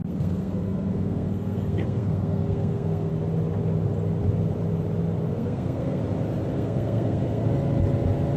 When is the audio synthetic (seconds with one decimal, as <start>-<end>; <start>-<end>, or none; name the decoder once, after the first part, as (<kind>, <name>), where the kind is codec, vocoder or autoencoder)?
0.0-3.1 (codec, SNAC); 5.3-6.0; 6.5-7.4

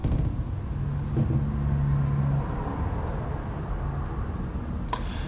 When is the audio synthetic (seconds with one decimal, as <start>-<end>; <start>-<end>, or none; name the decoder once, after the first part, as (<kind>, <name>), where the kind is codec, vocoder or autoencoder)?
none

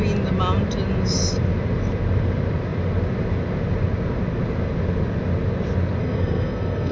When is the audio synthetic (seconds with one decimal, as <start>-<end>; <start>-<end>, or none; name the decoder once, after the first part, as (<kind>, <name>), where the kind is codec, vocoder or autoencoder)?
6.0-6.9 (codec, SNAC)

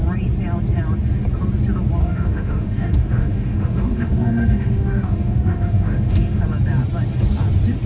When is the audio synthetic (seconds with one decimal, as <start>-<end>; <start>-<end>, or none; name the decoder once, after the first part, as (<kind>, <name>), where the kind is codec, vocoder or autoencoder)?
2.0-6.4 (autoencoder, DAC-VAE)

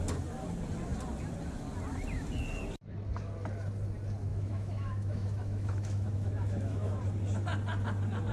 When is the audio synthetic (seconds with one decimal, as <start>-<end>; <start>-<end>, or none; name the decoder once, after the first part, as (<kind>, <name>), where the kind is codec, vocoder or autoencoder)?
4.3-7.0 (autoencoder, DAC-VAE)